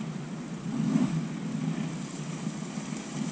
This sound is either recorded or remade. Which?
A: recorded